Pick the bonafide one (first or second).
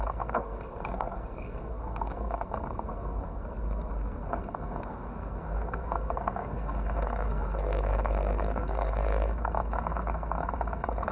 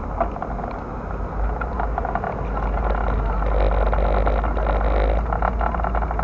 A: second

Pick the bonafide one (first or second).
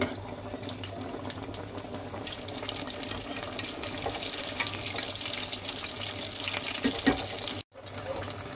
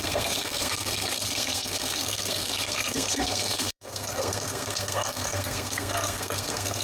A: first